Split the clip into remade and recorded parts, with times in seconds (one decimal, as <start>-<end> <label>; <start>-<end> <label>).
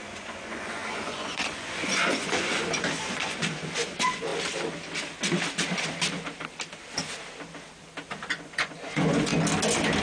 0.0-4.3 remade; 4.3-8.3 recorded; 8.3-9.3 remade; 9.3-10.0 recorded